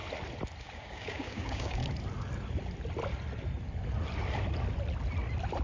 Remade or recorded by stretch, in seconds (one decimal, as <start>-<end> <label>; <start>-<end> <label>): 0.0-0.6 recorded; 0.6-1.8 remade; 1.8-5.6 recorded